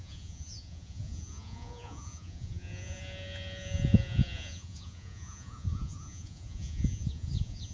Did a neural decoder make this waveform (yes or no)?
yes